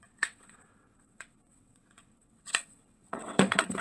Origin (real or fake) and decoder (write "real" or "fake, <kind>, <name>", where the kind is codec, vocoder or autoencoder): fake, vocoder, WaveNeXt